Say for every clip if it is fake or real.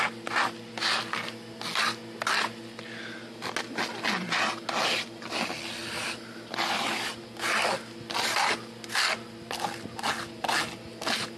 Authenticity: real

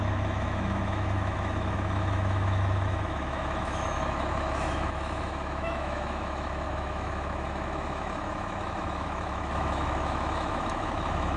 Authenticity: fake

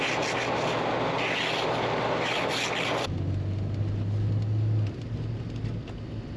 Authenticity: real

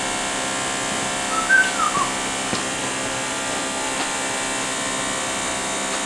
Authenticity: real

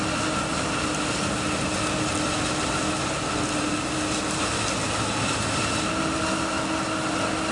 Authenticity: real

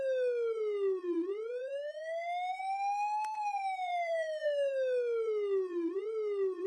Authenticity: real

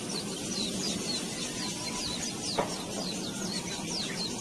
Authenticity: real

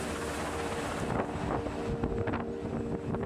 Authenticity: real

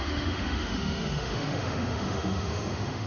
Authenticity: fake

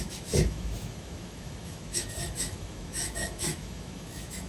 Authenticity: fake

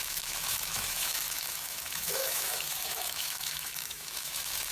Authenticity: fake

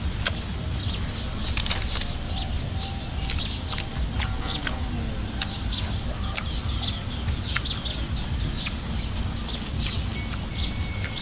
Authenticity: real